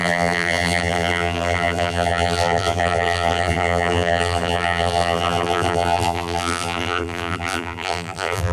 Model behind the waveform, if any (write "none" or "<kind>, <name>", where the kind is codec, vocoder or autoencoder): vocoder, BigVGAN v2